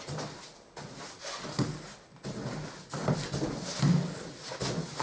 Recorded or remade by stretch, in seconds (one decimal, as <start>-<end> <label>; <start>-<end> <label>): 0.0-5.0 recorded